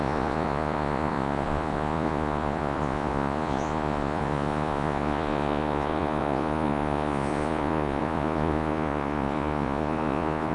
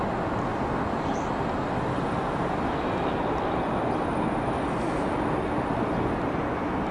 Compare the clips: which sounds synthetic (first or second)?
first